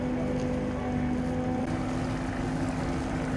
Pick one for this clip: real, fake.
real